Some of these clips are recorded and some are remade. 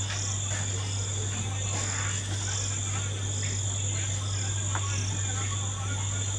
recorded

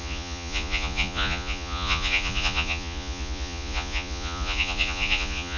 remade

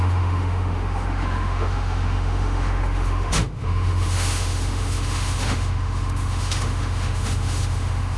remade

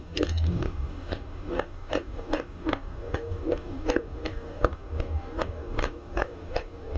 remade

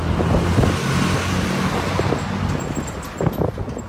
recorded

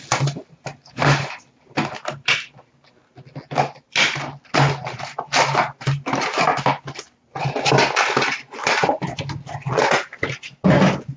recorded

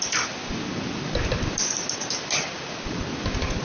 recorded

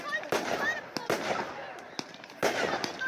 recorded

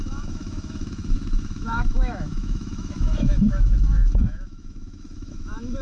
remade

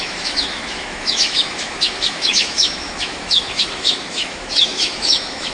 remade